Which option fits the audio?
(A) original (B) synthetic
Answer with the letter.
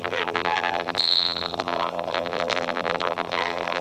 B